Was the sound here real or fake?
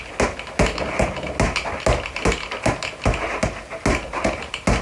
real